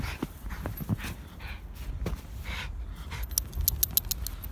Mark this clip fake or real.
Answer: real